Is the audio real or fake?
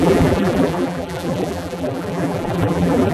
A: fake